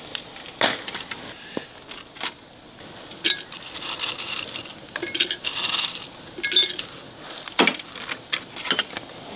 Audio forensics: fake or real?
real